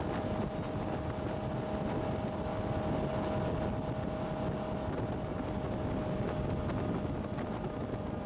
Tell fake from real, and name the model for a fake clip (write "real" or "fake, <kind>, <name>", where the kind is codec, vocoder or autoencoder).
real